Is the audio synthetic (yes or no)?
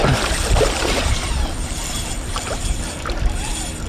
yes